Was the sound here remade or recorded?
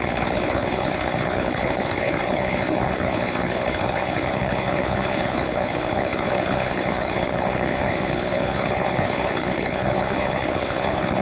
remade